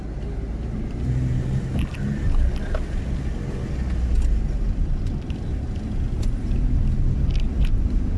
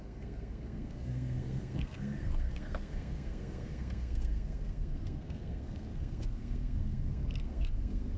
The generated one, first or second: second